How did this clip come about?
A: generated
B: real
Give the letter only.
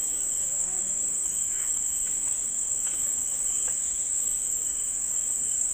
A